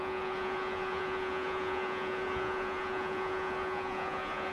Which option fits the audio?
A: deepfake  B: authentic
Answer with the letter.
A